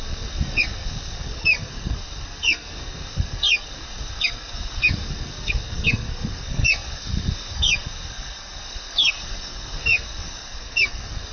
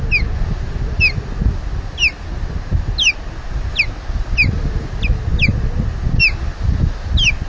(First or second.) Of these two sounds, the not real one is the first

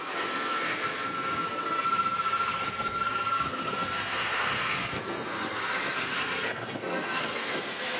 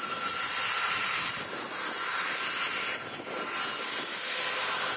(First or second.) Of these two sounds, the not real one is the first